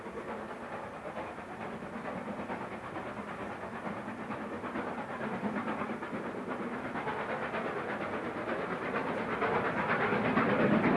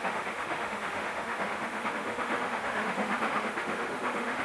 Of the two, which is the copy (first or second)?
second